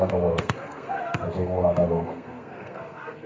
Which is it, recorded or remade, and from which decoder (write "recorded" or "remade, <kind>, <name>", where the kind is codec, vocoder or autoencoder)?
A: remade, codec, SNAC